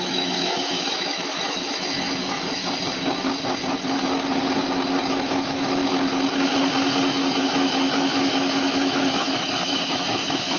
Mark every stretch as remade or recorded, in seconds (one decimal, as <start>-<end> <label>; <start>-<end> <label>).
0.0-2.6 remade; 2.6-5.3 recorded; 5.3-5.8 remade; 5.8-7.4 recorded; 7.4-10.6 remade